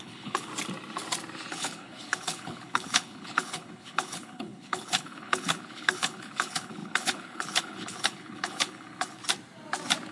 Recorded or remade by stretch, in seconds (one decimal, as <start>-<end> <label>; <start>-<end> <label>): 0.0-0.5 remade; 0.5-1.5 recorded; 1.5-9.2 remade; 9.2-10.1 recorded